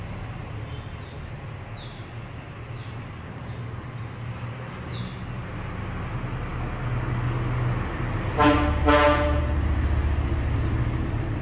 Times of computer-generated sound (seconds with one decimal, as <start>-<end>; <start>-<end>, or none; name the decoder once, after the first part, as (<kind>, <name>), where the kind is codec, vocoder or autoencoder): none